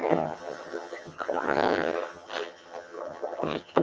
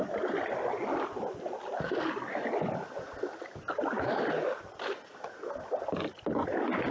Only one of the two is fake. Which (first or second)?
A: first